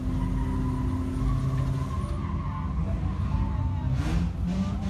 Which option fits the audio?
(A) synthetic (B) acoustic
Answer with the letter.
B